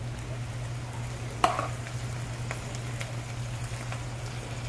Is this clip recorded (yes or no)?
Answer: yes